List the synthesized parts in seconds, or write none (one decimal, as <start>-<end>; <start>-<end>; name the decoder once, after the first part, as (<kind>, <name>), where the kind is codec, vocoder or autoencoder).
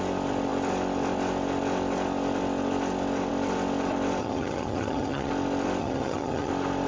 4.2-5.3 (vocoder, HiFi-GAN); 5.8-6.5